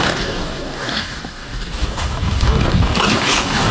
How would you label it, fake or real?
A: fake